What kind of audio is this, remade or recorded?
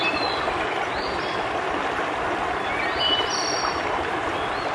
recorded